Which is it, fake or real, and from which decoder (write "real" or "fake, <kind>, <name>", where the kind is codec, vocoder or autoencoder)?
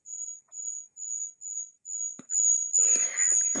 real